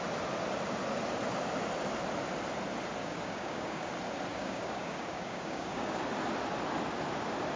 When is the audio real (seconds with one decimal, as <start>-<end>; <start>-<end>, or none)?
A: 0.0-3.0; 3.9-4.3; 6.0-7.6